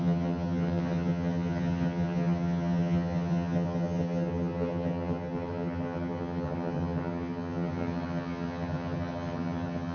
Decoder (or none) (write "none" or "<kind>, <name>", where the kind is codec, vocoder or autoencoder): vocoder, HiFi-GAN